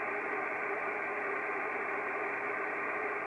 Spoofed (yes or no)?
yes